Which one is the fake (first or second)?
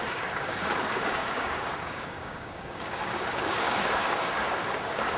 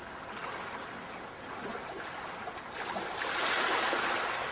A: first